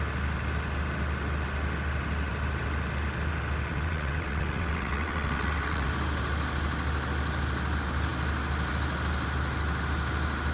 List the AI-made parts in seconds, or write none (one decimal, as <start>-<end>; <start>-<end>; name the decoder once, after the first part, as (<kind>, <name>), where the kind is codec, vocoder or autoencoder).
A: 3.7-5.9 (vocoder, WaveNeXt)